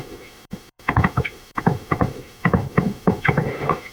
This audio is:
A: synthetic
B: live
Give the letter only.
A